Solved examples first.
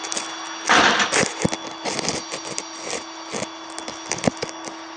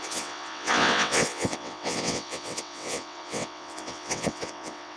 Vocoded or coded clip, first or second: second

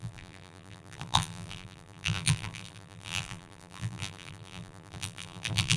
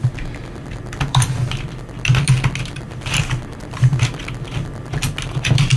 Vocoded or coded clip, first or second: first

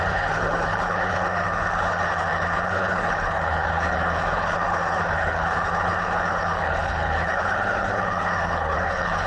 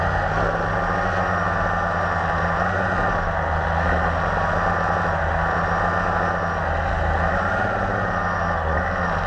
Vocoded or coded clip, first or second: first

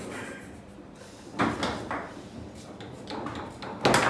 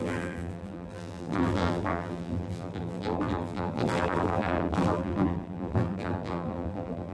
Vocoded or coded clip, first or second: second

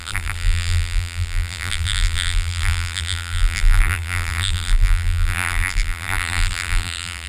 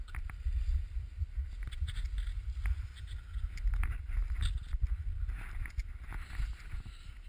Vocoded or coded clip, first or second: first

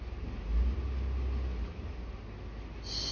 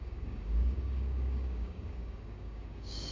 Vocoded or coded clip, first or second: second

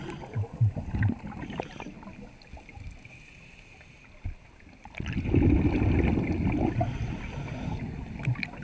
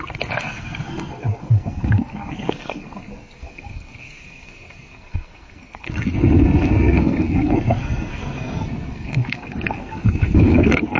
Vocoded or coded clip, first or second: second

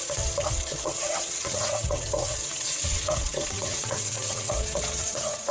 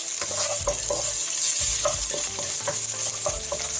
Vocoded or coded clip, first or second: first